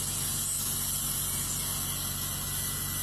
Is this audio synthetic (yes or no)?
no